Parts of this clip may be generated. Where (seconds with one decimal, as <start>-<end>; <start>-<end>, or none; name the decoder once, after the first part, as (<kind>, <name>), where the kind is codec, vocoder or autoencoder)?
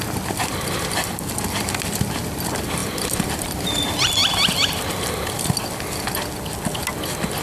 2.8-3.7 (vocoder, BigVGAN v2); 4.2-5.3